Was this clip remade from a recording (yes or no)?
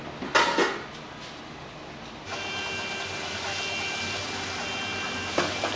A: no